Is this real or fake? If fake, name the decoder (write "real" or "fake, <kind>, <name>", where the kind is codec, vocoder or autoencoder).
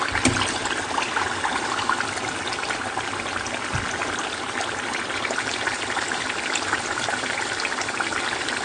fake, vocoder, BigVGAN v2